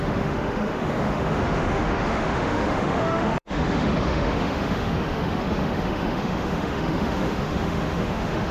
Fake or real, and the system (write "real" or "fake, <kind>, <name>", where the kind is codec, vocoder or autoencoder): fake, autoencoder, DAC-VAE